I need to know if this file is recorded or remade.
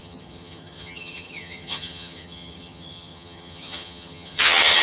remade